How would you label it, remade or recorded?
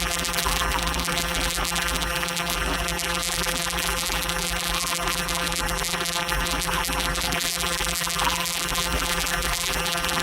remade